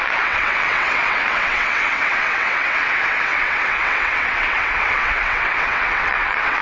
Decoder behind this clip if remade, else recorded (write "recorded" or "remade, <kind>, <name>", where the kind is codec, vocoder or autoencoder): remade, vocoder, WaveNeXt